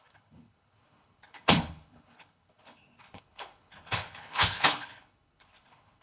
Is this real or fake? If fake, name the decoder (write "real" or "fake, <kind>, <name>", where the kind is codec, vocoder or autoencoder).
fake, codec, HILCodec